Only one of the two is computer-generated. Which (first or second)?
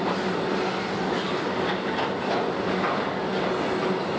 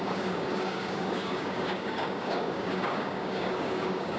second